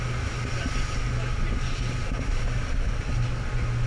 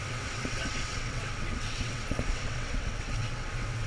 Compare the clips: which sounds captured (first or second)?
first